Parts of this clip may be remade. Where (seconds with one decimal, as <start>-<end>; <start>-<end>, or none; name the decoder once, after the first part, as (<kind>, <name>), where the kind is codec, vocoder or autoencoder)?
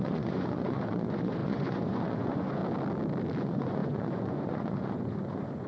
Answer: 0.0-2.6 (vocoder, Vocos); 3.4-5.7